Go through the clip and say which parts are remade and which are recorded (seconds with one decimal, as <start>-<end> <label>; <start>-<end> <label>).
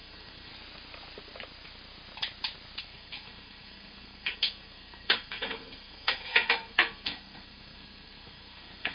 0.0-0.5 remade; 0.5-2.8 recorded; 2.8-8.9 remade